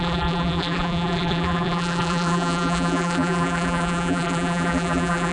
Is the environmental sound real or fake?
fake